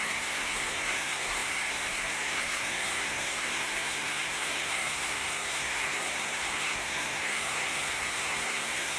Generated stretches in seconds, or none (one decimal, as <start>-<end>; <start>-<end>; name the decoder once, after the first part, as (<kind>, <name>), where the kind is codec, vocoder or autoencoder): 0.0-9.0 (codec, SNAC)